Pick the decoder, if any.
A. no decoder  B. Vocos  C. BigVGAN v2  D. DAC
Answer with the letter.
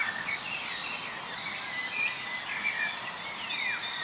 A